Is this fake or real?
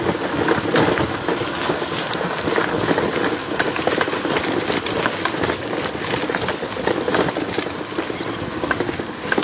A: real